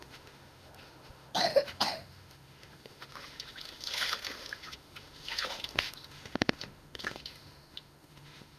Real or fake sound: fake